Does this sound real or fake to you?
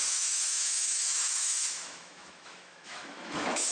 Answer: fake